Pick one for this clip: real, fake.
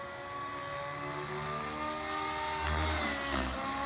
real